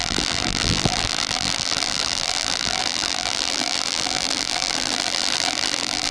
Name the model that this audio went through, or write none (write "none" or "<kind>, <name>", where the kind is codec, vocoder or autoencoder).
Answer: vocoder, BigVGAN v2